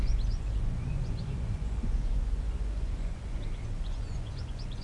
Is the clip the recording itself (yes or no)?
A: no